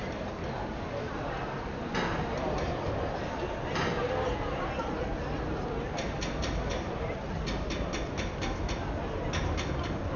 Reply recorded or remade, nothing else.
recorded